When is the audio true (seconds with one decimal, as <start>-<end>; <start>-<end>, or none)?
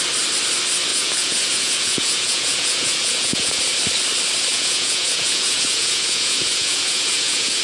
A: 0.0-0.9; 3.6-4.5